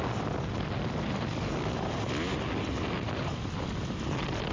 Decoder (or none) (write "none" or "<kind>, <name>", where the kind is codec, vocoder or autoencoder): none